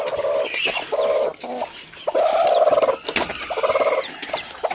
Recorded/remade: recorded